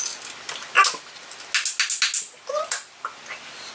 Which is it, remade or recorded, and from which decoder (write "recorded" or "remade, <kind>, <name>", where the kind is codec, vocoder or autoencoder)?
recorded